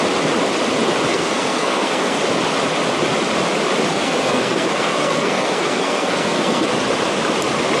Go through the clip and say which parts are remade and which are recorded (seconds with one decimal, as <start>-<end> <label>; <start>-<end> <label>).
0.0-1.1 recorded; 1.1-2.2 remade; 2.2-3.9 recorded; 3.9-6.7 remade; 6.7-7.8 recorded